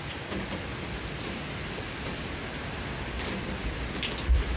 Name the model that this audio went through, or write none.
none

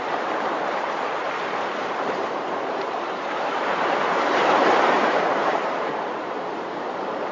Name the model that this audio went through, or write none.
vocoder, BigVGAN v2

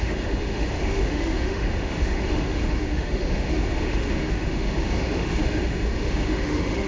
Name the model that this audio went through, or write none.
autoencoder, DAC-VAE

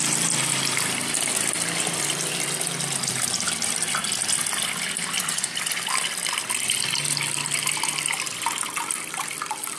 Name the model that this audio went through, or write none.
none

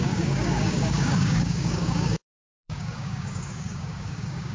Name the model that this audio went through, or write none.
codec, DAC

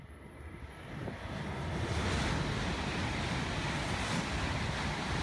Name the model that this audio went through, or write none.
none